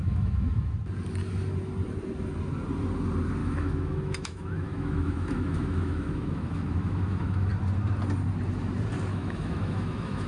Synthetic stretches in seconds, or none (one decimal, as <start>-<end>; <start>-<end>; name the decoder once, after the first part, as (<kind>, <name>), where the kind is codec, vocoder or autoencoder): 0.0-0.7 (autoencoder, DAC-VAE); 3.4-7.5; 9.1-10.3